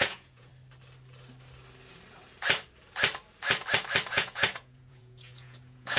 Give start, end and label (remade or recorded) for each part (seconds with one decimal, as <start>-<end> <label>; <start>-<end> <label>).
0.0-0.5 remade; 0.5-4.1 recorded; 4.1-6.0 remade